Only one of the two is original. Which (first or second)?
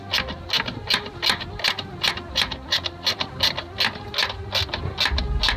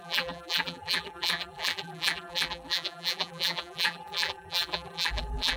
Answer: first